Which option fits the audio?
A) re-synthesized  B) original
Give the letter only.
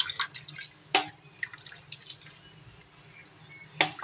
B